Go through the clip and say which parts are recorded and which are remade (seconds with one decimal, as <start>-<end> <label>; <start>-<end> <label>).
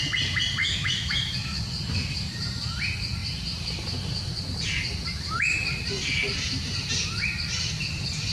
0.0-0.6 recorded; 0.6-1.6 remade; 1.6-8.3 recorded